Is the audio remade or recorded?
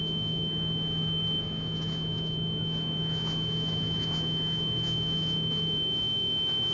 remade